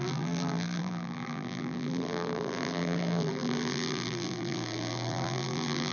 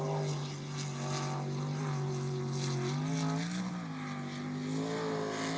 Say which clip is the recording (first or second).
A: second